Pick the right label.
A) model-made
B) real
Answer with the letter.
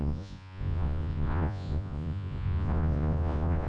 A